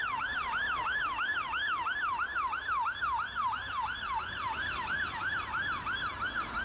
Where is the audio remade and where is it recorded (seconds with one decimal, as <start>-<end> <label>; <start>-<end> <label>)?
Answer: 0.0-6.6 recorded